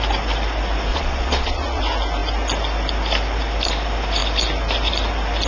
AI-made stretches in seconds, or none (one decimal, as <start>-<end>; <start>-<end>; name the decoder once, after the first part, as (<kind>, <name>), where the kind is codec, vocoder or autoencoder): 0.9-1.8 (vocoder, Vocos)